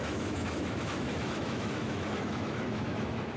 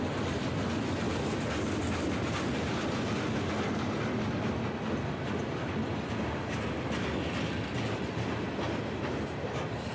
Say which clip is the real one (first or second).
second